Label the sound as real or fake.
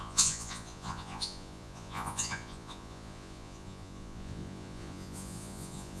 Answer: fake